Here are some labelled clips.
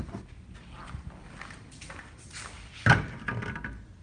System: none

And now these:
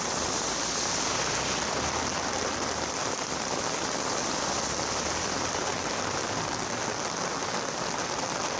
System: none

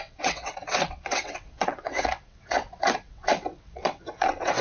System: vocoder, WaveNeXt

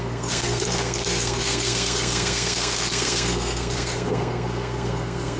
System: codec, SNAC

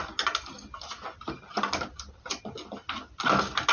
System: none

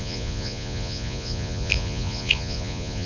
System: vocoder, Vocos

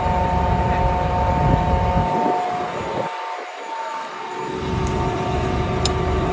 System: none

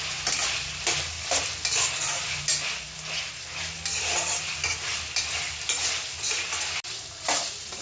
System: none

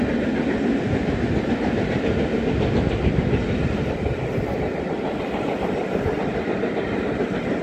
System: none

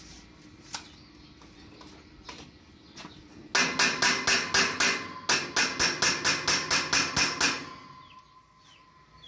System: none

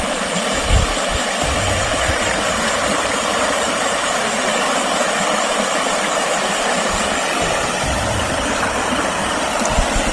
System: vocoder, BigVGAN v2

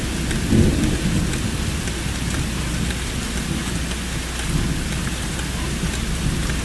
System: none